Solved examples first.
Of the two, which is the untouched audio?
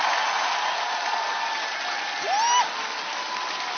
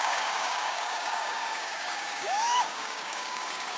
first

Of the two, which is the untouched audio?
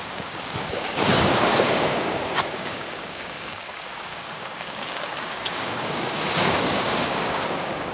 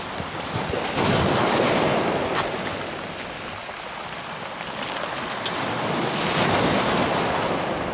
second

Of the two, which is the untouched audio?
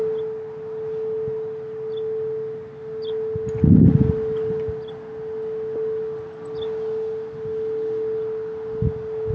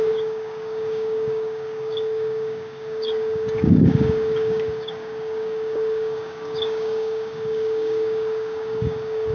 first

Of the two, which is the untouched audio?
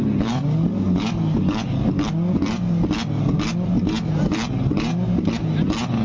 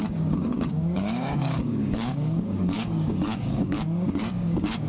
first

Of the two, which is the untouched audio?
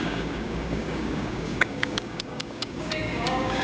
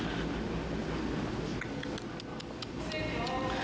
second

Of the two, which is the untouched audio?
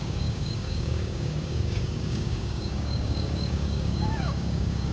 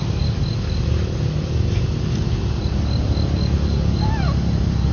second